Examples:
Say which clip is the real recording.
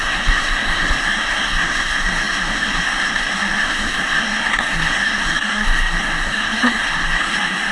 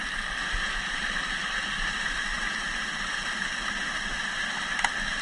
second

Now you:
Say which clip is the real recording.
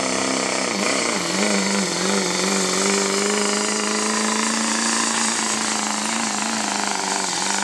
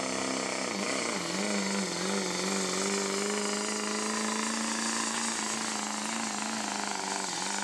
second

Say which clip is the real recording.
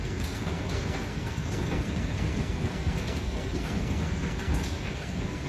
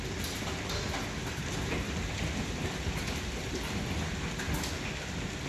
second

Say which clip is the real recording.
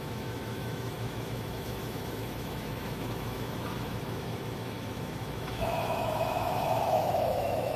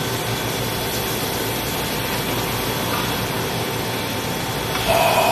second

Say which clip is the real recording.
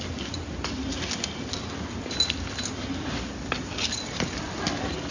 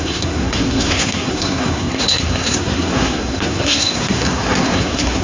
first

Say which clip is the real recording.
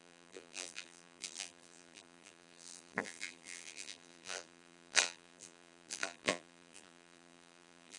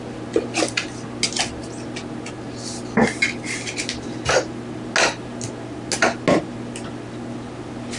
second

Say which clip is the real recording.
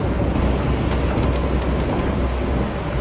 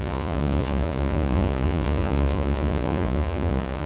first